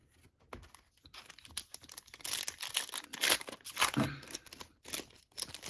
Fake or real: real